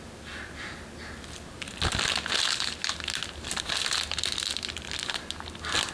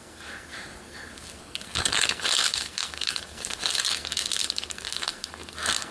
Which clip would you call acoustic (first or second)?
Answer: first